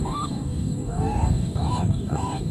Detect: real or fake fake